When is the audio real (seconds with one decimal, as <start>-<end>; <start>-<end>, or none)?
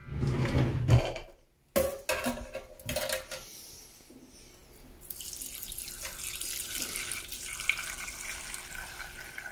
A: 0.0-2.2; 4.6-5.7